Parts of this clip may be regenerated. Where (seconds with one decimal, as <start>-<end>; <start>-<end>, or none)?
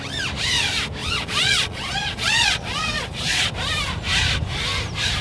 1.0-3.5